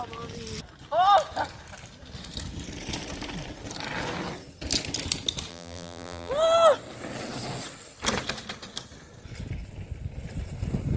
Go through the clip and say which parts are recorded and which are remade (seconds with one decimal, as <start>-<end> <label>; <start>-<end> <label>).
0.0-5.5 recorded; 5.5-6.3 remade; 6.3-11.0 recorded